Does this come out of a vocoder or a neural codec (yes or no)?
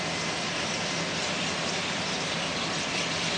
no